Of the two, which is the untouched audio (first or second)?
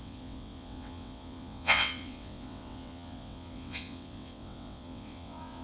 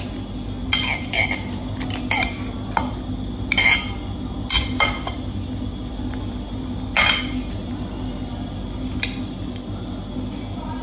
second